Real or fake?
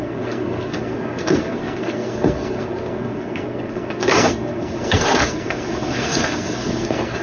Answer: fake